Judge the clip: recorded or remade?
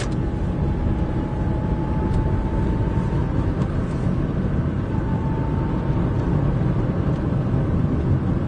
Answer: recorded